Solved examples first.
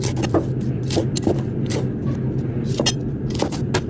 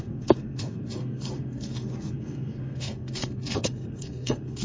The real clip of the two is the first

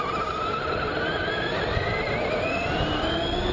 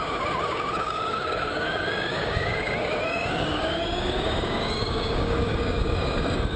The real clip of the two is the first